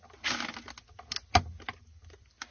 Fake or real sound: real